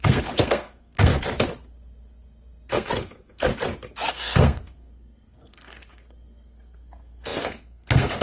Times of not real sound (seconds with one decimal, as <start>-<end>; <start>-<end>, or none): 0.0-1.1; 2.7-3.5; 4.1-8.2